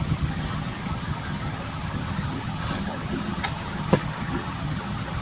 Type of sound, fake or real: fake